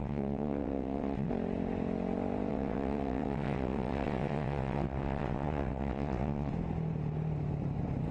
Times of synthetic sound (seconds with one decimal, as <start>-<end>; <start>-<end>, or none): 0.0-1.3; 2.5-6.5